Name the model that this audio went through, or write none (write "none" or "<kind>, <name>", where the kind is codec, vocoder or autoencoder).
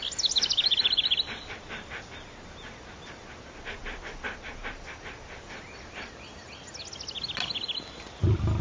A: none